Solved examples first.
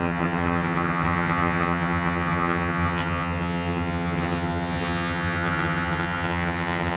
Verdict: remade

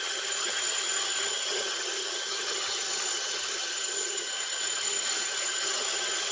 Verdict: remade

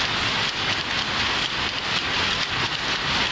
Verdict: recorded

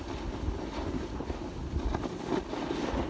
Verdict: recorded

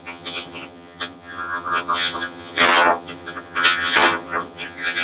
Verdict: remade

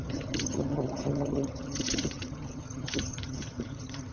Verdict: remade